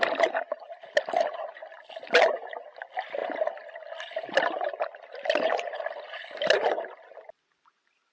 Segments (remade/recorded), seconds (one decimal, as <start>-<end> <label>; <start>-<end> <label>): 0.0-8.1 recorded